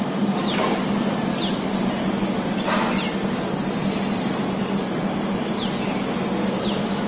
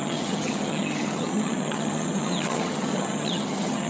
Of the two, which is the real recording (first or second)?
first